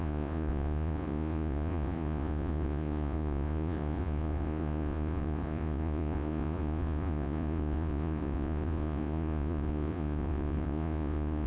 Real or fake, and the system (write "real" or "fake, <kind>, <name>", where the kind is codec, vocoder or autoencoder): fake, vocoder, Vocos